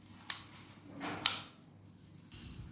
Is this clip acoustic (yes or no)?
yes